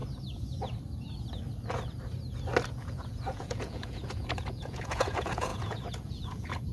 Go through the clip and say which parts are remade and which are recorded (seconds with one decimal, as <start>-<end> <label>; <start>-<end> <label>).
0.0-2.7 recorded; 2.7-6.7 remade